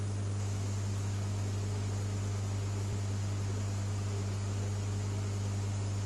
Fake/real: real